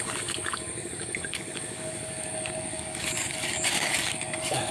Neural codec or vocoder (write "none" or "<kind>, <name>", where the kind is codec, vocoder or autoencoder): codec, DAC